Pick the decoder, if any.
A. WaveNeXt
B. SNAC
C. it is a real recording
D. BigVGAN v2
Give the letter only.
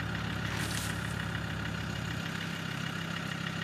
C